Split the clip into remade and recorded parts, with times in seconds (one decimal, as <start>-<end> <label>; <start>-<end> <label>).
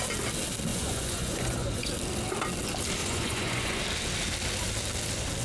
0.0-0.7 recorded; 0.7-1.9 remade; 1.9-3.0 recorded; 3.0-3.8 remade; 3.8-5.4 recorded